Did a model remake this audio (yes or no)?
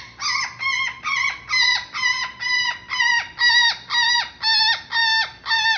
no